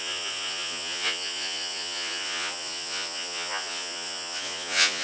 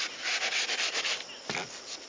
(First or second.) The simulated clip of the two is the first